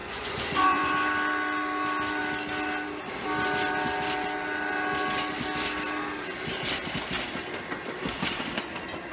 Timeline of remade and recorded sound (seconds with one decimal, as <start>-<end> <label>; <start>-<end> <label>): 0.0-0.9 remade; 0.9-9.1 recorded